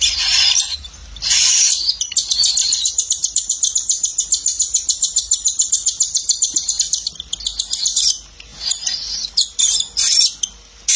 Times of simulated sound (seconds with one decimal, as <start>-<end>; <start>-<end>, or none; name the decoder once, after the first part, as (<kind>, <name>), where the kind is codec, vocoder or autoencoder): 2.6-6.7 (vocoder, BigVGAN v2)